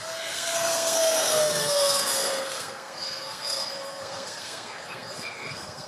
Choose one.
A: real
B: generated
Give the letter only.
B